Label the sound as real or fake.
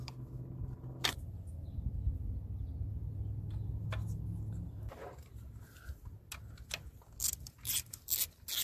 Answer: real